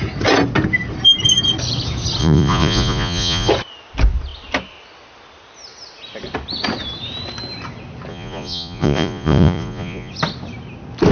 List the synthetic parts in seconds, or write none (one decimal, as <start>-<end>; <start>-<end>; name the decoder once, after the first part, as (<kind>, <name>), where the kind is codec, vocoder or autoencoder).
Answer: 2.2-3.5 (vocoder, Vocos); 8.1-10.1